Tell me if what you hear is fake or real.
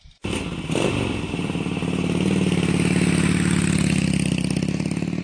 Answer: real